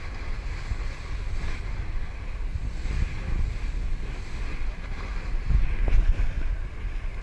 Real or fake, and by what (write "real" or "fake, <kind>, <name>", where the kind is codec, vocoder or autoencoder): real